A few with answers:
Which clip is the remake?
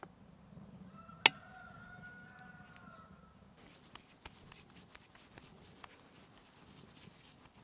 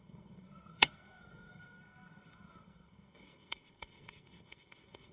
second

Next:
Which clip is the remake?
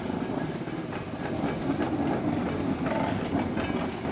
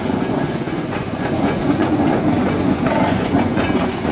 second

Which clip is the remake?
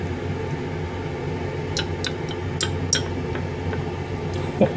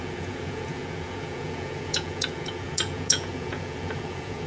second